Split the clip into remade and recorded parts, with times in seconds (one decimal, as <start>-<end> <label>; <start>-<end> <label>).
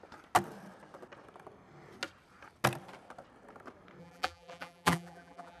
0.0-4.0 recorded; 4.0-5.6 remade